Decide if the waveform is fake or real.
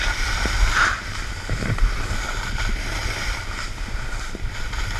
fake